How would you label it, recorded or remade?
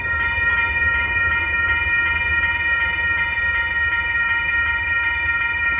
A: remade